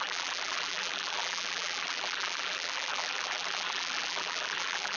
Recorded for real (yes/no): no